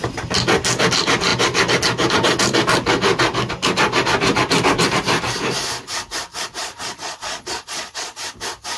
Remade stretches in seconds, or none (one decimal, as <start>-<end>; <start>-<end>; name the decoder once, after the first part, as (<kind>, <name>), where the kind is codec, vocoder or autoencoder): 6.6-8.2 (vocoder, Vocos)